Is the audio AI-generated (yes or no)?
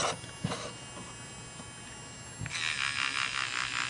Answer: no